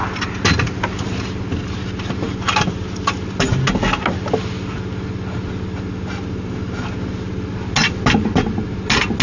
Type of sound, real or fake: real